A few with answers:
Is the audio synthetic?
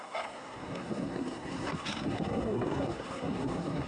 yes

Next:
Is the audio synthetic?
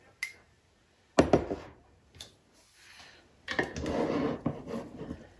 no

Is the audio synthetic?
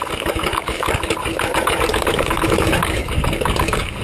yes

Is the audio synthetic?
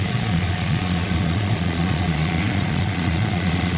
yes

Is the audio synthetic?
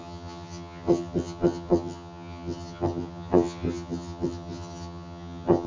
yes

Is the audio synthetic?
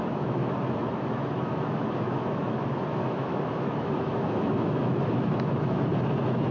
yes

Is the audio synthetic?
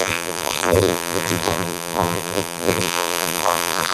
yes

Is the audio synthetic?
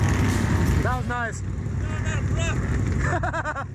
no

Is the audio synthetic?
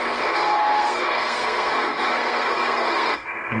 yes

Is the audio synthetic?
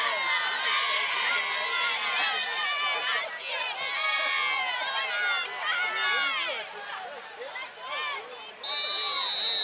no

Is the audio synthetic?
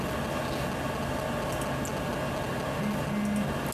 no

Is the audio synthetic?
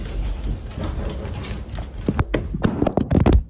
no